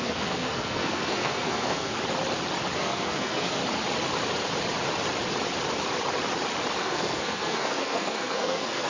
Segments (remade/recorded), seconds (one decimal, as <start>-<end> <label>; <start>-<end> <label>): 0.0-1.9 remade; 1.9-2.8 recorded; 2.8-3.6 remade; 3.6-6.8 recorded; 6.8-8.9 remade